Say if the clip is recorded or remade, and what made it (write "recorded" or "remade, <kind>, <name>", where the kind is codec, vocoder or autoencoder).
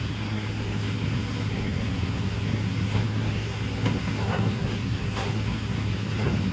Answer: remade, codec, SNAC